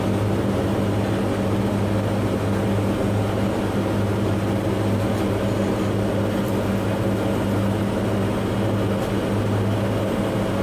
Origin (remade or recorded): recorded